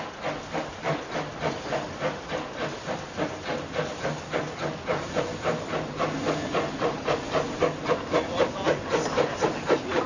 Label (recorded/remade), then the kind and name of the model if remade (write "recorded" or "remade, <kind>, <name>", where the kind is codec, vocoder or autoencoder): recorded